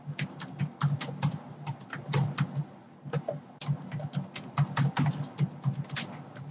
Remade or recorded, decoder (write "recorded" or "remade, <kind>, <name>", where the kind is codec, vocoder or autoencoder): recorded